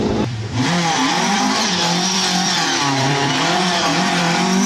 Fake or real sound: fake